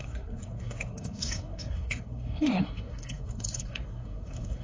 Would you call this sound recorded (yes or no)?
no